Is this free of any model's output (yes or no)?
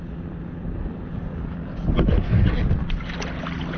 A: yes